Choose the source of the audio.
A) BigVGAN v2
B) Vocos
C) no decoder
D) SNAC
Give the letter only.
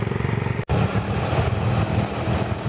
C